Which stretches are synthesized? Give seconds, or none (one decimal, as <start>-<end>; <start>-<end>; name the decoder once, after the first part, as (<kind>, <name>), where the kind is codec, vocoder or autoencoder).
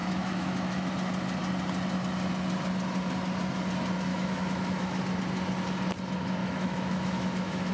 0.0-0.9 (autoencoder, DAC-VAE); 4.1-5.0; 6.4-7.7